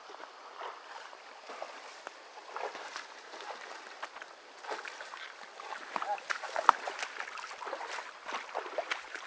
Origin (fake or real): real